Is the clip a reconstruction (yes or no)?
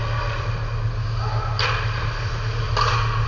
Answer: no